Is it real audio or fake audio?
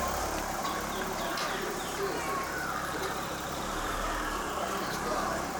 fake